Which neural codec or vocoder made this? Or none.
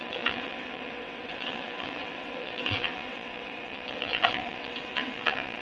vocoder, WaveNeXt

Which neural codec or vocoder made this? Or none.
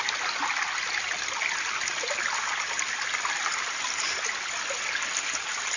none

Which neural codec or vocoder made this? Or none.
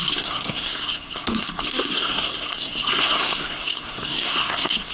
codec, SNAC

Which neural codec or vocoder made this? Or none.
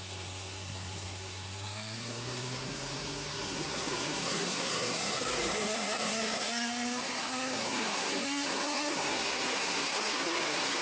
codec, SNAC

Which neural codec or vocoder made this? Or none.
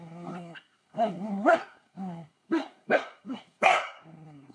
codec, SNAC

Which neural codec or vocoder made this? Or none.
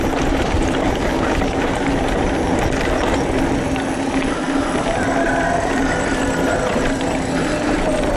none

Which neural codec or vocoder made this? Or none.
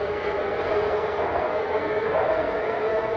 codec, SNAC